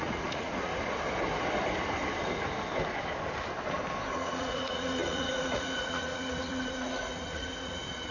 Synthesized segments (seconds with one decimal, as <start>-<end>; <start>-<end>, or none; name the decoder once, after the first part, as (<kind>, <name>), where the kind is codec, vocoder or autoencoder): 0.0-0.7 (vocoder, Vocos); 4.1-8.1